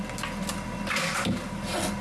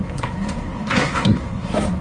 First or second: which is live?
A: first